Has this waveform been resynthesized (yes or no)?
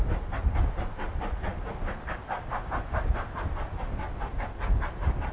no